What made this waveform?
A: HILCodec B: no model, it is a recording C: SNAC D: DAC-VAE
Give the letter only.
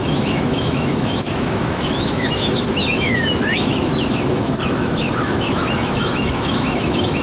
D